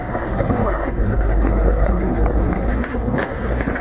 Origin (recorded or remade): remade